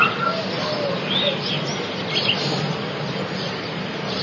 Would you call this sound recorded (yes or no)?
yes